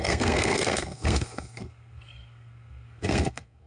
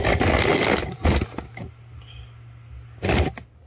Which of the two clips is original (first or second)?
second